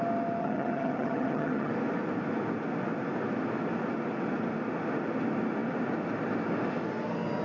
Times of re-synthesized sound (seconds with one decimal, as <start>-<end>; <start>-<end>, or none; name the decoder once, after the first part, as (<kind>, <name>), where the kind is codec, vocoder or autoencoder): 0.4-1.7 (vocoder, HiFi-GAN)